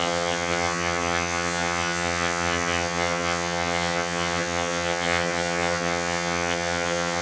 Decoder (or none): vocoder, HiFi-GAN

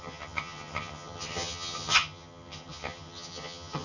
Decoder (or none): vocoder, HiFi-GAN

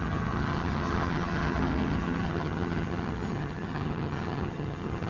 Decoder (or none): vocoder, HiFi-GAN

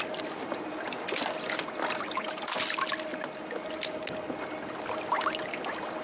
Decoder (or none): none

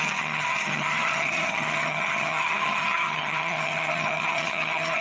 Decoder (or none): vocoder, HiFi-GAN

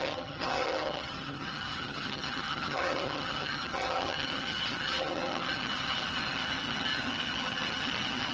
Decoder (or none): vocoder, HiFi-GAN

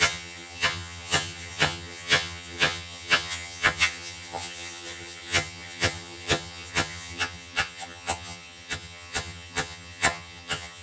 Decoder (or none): vocoder, HiFi-GAN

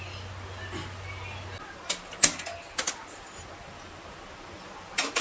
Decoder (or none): none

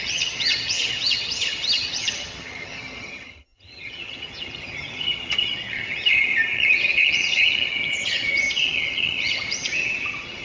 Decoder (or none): vocoder, HiFi-GAN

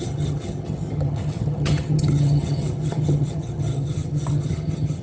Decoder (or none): vocoder, HiFi-GAN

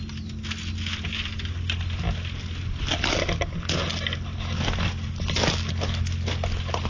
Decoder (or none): none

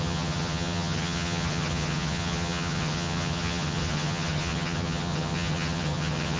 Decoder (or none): vocoder, HiFi-GAN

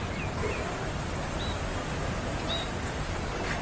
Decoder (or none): none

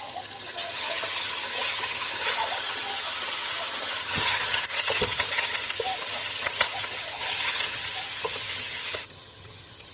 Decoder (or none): vocoder, HiFi-GAN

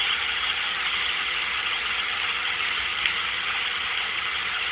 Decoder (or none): vocoder, HiFi-GAN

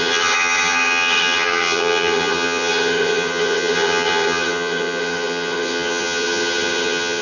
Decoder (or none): vocoder, HiFi-GAN